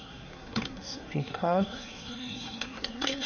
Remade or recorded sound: remade